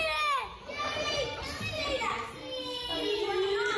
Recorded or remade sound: recorded